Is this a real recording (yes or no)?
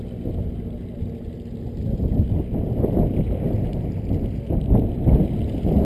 yes